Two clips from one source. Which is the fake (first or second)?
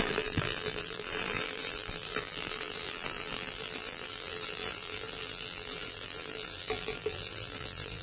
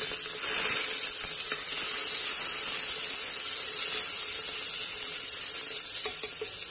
first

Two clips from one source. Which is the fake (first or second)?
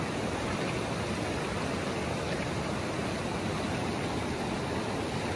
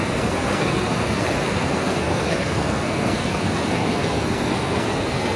second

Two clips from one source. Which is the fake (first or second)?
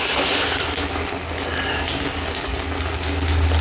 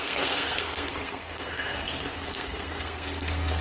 second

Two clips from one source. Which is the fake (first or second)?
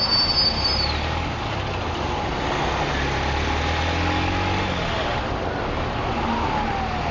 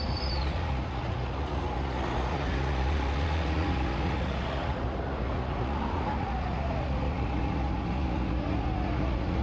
second